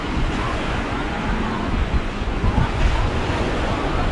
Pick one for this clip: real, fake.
fake